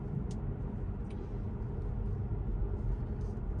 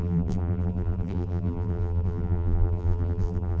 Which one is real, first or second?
first